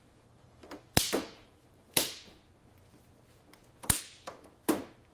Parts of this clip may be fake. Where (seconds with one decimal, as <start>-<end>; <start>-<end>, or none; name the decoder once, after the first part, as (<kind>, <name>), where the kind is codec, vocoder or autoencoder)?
0.0-2.2 (vocoder, BigVGAN v2)